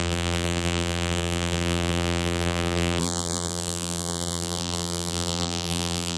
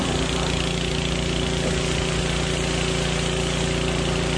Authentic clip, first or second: second